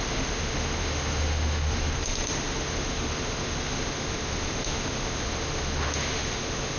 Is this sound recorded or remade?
remade